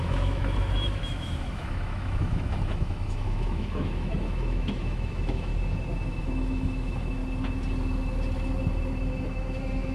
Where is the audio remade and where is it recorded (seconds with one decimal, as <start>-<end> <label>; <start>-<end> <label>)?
0.0-5.5 remade; 5.5-6.1 recorded; 6.1-7.2 remade; 7.2-9.1 recorded; 9.1-9.9 remade